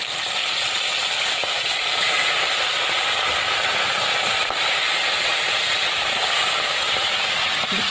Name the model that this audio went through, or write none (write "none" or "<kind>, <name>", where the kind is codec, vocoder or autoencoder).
vocoder, BigVGAN v2